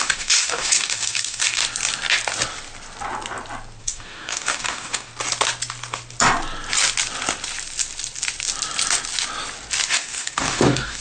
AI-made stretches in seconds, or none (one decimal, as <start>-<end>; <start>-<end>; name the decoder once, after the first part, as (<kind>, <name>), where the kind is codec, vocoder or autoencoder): 0.0-1.6 (codec, DAC); 3.8-5.1; 9.9-11.0